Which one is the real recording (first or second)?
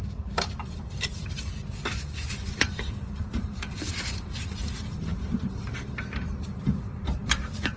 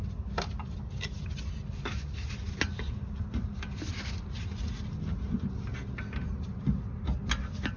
second